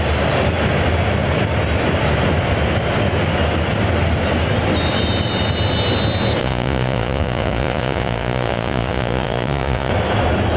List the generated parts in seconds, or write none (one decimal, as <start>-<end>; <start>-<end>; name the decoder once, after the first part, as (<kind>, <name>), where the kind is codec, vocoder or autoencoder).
6.4-9.9 (vocoder, Vocos)